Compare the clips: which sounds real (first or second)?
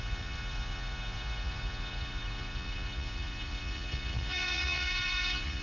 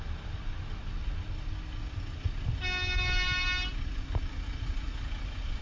second